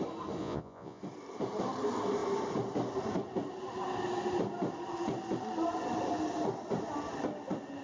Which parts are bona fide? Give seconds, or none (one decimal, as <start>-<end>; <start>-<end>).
0.0-0.4; 1.0-7.8